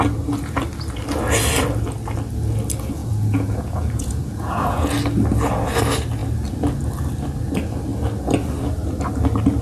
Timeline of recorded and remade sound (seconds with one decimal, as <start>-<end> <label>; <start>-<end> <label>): 0.0-3.0 recorded; 3.0-4.9 remade; 4.9-9.6 recorded